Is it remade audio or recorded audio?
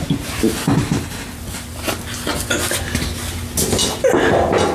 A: recorded